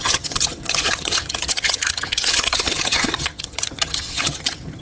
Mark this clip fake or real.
fake